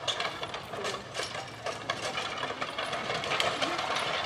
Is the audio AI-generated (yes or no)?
no